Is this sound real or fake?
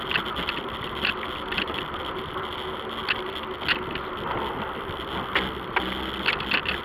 real